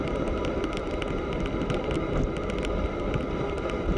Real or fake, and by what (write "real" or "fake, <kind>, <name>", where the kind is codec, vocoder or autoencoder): real